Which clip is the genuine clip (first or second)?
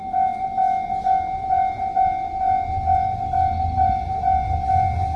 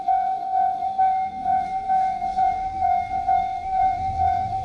first